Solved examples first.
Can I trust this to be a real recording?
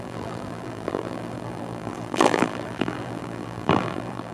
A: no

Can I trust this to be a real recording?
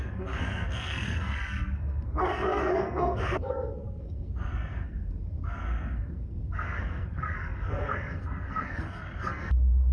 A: no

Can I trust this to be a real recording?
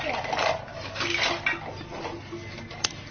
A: yes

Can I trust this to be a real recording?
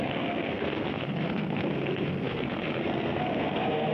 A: no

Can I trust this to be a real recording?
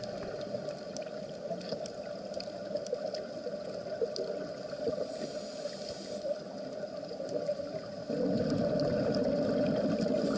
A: yes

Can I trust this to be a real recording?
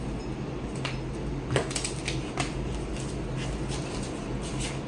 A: yes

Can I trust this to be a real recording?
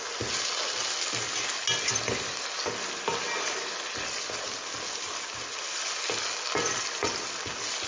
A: yes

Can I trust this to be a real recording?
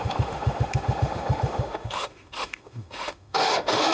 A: no